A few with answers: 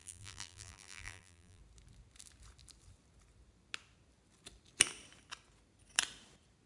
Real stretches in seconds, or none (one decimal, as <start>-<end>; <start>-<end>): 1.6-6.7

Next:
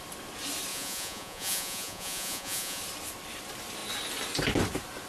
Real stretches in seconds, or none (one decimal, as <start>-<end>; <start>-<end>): 0.0-0.7; 2.8-5.1

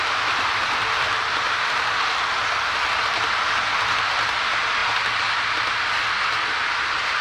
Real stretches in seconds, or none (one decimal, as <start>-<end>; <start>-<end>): 0.0-7.2